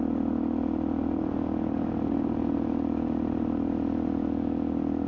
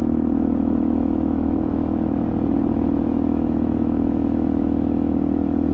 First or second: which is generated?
second